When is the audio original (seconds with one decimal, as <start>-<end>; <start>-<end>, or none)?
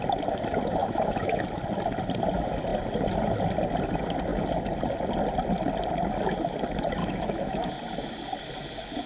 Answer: 0.0-0.8; 1.4-7.0; 7.7-9.1